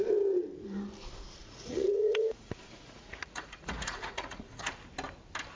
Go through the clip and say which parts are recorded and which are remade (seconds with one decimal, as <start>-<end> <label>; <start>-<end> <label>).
0.0-1.4 recorded; 1.4-4.8 remade; 4.8-5.6 recorded